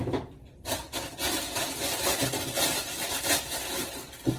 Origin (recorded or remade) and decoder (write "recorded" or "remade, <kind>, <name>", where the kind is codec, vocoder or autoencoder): recorded